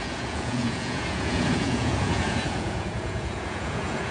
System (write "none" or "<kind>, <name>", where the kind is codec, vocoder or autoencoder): vocoder, Vocos